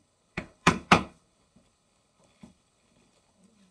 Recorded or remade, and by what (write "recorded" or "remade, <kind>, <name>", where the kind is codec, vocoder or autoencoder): remade, codec, HILCodec